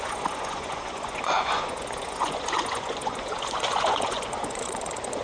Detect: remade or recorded remade